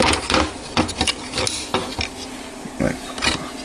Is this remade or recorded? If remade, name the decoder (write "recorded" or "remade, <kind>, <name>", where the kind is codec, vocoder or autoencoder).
recorded